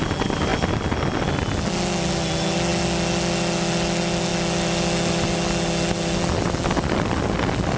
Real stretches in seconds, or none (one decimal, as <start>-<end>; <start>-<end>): 0.0-7.8